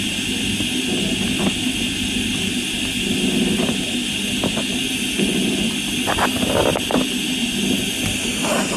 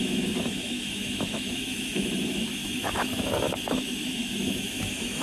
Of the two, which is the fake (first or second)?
second